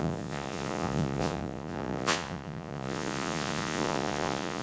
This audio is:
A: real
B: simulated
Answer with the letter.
B